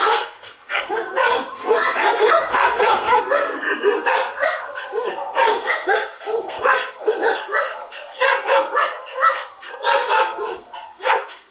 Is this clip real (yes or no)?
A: no